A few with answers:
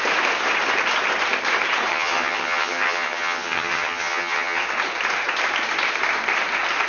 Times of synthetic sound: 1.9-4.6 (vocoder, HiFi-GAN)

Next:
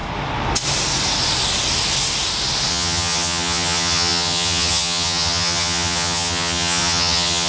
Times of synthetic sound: 2.7-7.5 (vocoder, HiFi-GAN)